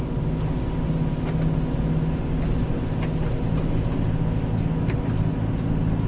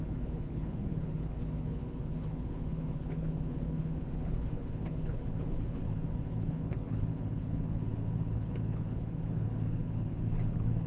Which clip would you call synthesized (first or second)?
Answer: second